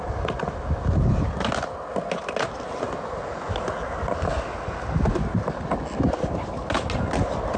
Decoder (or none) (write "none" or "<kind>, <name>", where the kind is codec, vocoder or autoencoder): none